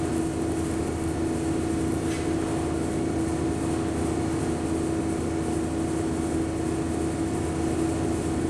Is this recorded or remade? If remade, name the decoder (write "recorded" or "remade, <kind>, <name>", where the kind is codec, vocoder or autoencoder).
recorded